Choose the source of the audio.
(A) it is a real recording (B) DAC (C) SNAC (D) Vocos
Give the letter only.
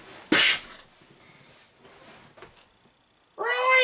A